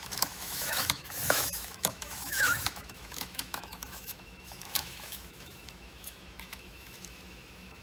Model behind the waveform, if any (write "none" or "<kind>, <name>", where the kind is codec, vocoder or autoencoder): autoencoder, DAC-VAE